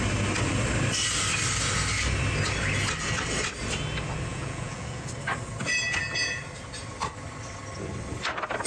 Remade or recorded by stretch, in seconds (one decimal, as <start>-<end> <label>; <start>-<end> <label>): 0.0-4.3 recorded; 4.3-5.1 remade; 5.1-8.7 recorded